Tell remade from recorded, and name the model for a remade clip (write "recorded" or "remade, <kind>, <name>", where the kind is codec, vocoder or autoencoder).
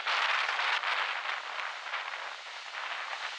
recorded